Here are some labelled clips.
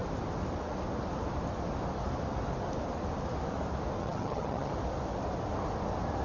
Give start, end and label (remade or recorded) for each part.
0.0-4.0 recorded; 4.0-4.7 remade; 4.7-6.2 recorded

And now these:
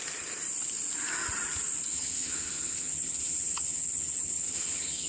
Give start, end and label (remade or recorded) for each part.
0.0-1.9 recorded; 1.9-5.1 remade

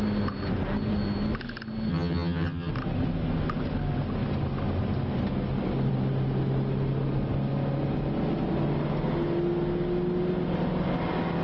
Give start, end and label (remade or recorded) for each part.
0.0-1.9 recorded; 1.9-2.7 remade; 2.7-11.4 recorded